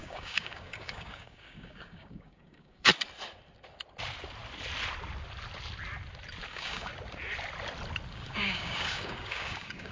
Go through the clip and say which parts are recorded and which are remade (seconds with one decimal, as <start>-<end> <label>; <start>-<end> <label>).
0.0-2.9 remade; 2.9-6.5 recorded; 6.5-6.9 remade; 6.9-8.1 recorded; 8.1-9.9 remade